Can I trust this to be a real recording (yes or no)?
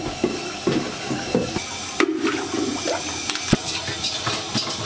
yes